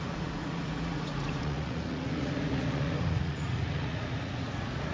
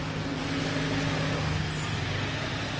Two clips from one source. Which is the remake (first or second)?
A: first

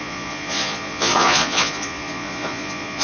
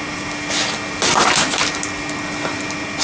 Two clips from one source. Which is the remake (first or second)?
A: first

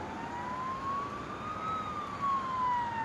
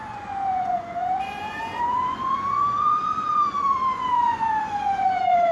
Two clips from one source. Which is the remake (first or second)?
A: second